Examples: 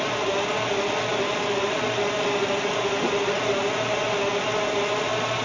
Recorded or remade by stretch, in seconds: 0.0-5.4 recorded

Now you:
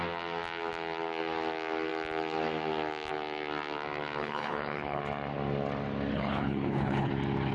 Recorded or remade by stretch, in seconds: 0.0-4.2 recorded; 4.2-5.0 remade; 5.0-6.1 recorded; 6.1-7.1 remade; 7.1-7.5 recorded

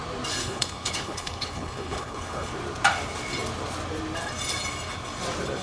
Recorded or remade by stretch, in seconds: 0.0-0.4 recorded; 0.4-2.5 remade; 2.5-5.6 recorded

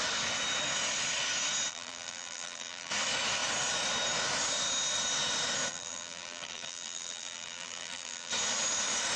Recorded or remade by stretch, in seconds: 0.0-1.7 recorded; 1.7-2.9 remade; 2.9-5.7 recorded; 5.7-8.3 remade; 8.3-9.2 recorded

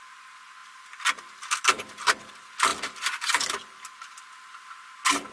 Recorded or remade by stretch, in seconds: 0.0-0.6 recorded; 0.6-2.3 remade; 2.3-2.7 recorded; 2.7-4.1 remade; 4.1-5.3 recorded